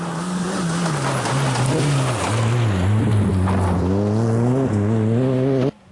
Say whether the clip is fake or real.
real